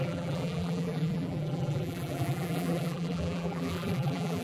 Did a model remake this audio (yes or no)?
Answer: yes